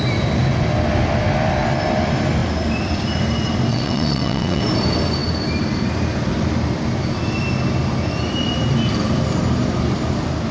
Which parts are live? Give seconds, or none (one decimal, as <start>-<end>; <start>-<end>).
0.0-3.7; 4.6-10.5